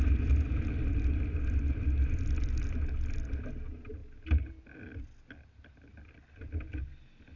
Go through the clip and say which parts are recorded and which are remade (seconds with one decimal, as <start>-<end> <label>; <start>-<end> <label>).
0.0-7.4 recorded